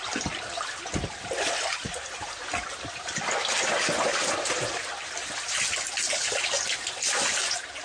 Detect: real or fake real